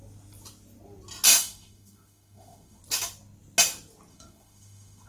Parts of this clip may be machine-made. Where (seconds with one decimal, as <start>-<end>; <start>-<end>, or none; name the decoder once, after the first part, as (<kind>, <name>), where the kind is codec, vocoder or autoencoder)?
1.3-2.8 (autoencoder, DAC-VAE); 4.1-5.1